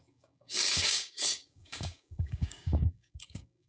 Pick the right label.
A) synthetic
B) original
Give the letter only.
A